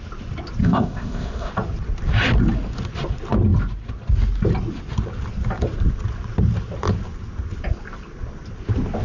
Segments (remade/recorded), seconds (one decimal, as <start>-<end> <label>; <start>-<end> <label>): 0.0-0.6 recorded; 0.6-1.5 remade; 1.5-9.0 recorded